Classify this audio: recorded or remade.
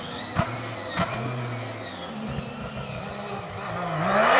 recorded